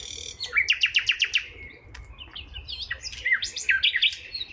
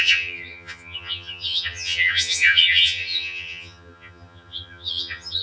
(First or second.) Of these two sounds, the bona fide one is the first